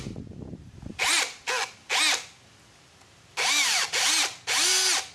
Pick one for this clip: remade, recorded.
recorded